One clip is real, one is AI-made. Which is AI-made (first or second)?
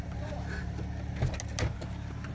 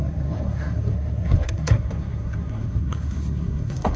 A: second